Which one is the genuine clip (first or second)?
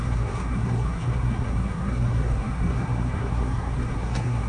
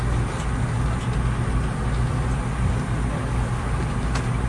second